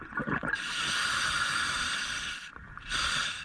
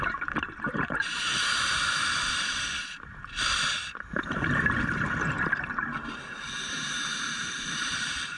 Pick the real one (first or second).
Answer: first